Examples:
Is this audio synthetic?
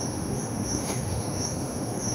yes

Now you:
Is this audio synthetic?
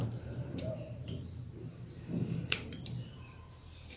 yes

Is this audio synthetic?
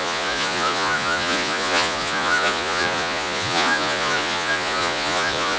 yes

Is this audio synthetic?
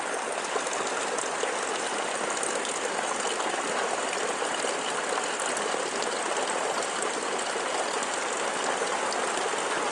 no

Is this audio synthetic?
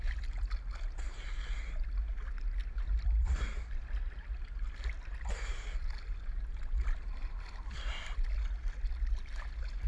no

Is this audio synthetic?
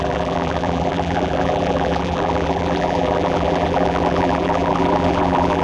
yes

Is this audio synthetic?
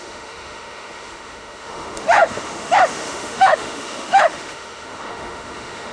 yes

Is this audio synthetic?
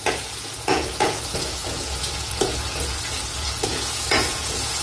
yes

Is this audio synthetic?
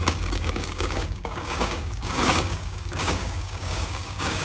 yes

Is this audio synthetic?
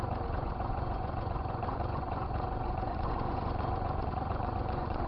yes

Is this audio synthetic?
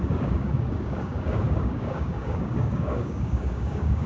yes